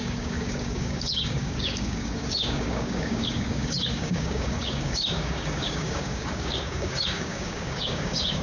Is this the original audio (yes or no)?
no